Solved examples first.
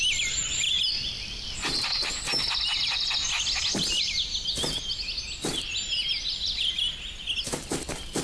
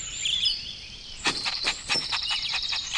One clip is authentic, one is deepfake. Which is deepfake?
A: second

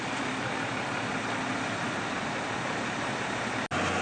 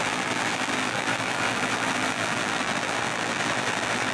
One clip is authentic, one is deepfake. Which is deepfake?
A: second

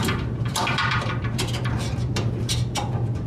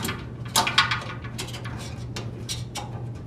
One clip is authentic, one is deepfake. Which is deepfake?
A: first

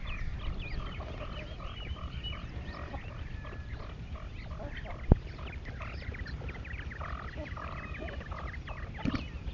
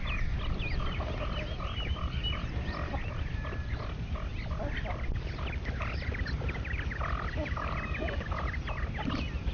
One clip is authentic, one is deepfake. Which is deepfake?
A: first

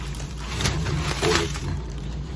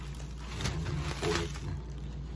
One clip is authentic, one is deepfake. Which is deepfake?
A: first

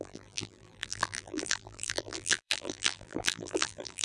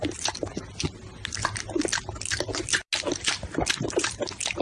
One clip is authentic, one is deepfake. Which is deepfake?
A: first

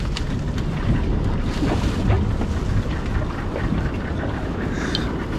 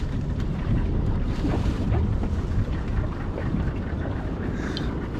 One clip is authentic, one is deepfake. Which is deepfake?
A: second